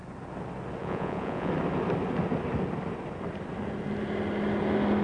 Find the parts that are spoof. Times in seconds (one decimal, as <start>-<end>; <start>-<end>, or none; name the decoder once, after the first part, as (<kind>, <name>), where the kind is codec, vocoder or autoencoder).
0.8-1.5 (vocoder, Vocos)